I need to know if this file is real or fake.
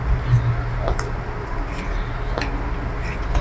real